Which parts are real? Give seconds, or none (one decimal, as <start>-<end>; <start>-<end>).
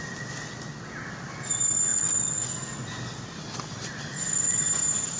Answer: 0.0-5.2